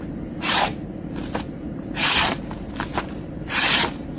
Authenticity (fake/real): fake